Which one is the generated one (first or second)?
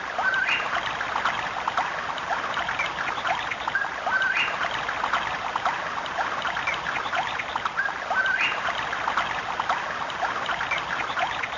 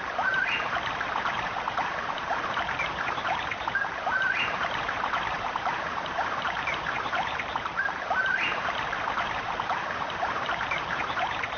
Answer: second